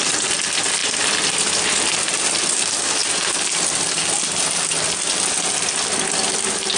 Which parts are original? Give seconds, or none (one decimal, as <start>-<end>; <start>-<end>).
3.0-6.3